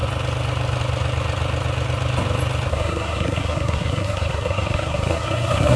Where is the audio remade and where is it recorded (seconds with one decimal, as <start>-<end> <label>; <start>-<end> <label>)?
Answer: 0.0-2.7 recorded; 2.7-5.8 remade